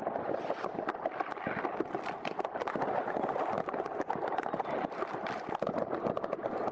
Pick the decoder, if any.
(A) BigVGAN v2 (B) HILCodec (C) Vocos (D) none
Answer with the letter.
D